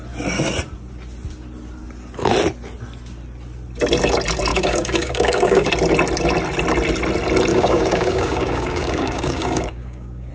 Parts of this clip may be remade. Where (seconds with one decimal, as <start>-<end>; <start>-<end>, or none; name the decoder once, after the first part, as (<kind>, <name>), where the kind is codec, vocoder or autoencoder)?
4.5-5.7 (codec, DAC); 7.5-10.3